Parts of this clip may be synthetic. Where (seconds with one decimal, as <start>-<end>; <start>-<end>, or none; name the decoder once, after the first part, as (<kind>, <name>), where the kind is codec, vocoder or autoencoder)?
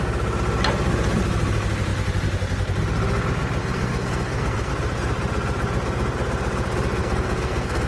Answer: 3.6-4.7 (codec, SNAC); 7.0-7.9